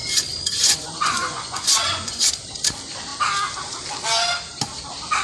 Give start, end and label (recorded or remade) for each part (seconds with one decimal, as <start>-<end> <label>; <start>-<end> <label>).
0.0-2.3 remade; 2.3-5.2 recorded